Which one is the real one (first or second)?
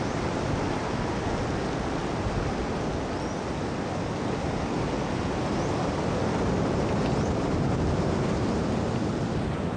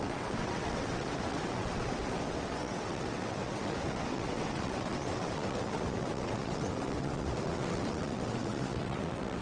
first